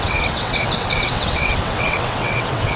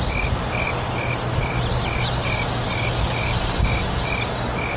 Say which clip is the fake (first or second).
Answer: first